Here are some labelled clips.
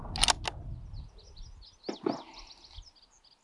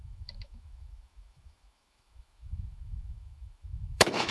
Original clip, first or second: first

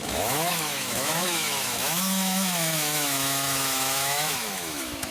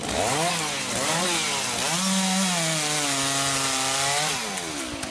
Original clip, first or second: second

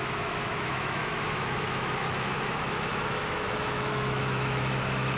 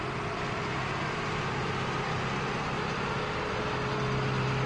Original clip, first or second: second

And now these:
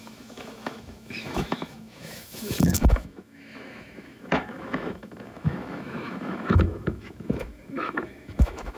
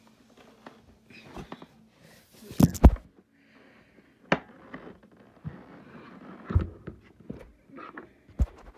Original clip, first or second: second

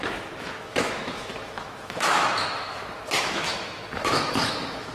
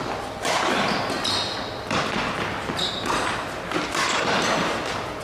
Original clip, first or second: second